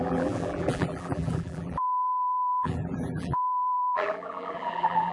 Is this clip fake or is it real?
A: fake